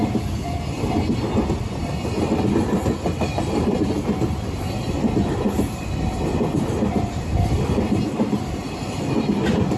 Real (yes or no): yes